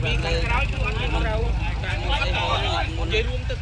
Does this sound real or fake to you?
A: real